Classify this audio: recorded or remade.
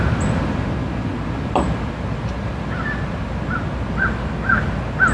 recorded